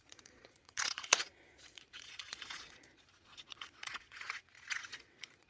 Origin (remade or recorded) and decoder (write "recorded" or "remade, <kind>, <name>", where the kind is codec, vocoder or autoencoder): remade, vocoder, Vocos